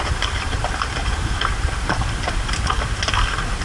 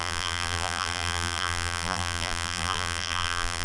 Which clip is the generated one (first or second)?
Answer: second